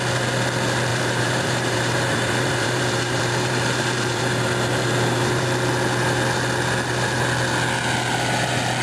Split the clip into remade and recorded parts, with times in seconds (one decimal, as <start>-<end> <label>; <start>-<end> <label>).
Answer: 0.0-0.9 recorded; 0.9-5.4 remade; 5.4-8.8 recorded